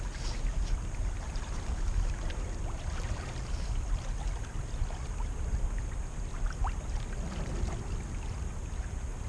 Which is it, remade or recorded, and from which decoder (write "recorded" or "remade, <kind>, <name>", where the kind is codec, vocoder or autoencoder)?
recorded